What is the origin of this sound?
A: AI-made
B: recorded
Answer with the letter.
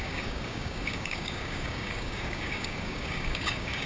A